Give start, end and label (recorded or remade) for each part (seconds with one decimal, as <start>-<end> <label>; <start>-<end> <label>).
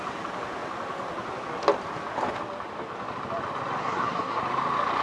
0.0-3.8 recorded; 3.8-4.4 remade; 4.4-5.0 recorded